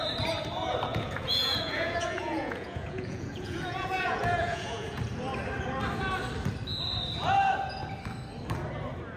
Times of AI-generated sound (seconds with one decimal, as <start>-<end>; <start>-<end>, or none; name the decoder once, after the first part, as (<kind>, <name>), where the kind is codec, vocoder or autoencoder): 0.9-5.0 (vocoder, Vocos)